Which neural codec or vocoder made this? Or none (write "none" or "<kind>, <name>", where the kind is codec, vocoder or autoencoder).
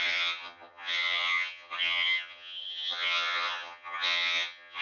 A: vocoder, HiFi-GAN